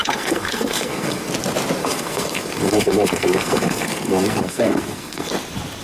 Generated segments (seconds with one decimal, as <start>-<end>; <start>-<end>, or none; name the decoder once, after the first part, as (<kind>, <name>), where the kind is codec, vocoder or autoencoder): 0.0-1.3 (codec, SNAC); 1.8-5.3